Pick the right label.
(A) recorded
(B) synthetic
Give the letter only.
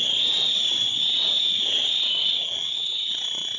B